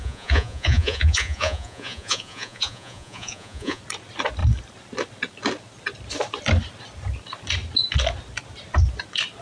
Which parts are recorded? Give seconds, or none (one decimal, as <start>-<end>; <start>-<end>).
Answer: 3.8-9.4